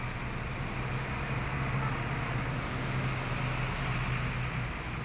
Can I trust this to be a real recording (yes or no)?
yes